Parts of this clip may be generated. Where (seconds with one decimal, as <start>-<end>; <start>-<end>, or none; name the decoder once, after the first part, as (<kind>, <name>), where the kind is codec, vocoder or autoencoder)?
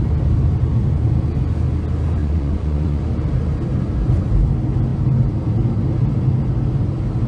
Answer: 2.2-3.0 (vocoder, Vocos)